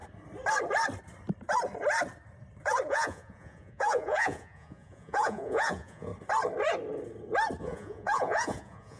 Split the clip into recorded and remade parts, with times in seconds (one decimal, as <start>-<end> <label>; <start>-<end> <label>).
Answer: 0.0-2.9 recorded; 2.9-6.1 remade; 6.1-7.6 recorded; 7.6-9.0 remade